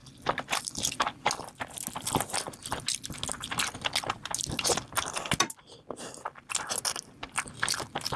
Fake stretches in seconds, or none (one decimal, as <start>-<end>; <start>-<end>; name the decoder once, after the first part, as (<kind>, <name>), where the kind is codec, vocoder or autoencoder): none

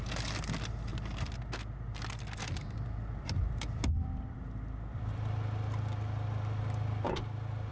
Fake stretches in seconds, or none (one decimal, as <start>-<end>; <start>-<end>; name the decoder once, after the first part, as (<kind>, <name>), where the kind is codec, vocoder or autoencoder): 0.0-0.9 (vocoder, BigVGAN v2); 2.8-7.7

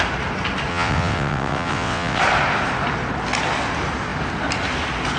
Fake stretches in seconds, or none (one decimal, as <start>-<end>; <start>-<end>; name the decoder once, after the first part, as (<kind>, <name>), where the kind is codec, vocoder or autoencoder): 0.7-2.2 (vocoder, WaveNeXt)

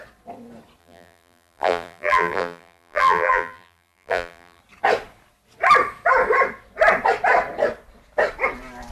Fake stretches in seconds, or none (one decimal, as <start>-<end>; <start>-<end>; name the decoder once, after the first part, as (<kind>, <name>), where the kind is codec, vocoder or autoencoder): 0.8-4.6 (vocoder, BigVGAN v2)

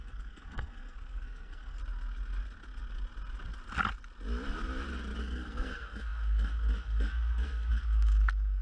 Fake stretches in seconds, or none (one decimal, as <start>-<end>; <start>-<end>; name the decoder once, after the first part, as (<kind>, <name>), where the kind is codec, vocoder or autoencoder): 0.0-1.8 (codec, SNAC); 5.2-8.6